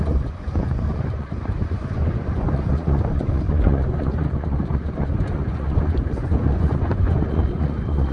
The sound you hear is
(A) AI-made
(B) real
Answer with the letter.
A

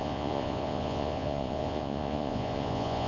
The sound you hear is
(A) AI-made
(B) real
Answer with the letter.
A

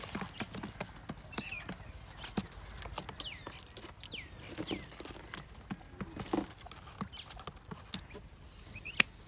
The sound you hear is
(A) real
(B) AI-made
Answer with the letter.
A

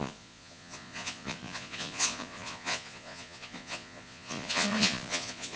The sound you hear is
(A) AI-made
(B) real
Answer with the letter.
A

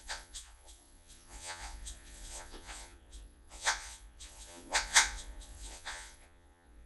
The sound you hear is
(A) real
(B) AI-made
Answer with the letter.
B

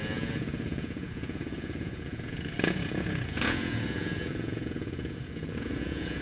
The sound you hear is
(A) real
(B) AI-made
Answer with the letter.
B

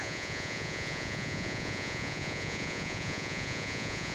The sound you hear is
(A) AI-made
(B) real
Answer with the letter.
A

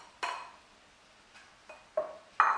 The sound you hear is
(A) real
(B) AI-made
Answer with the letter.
A